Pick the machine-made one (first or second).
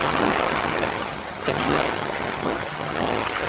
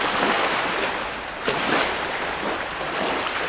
first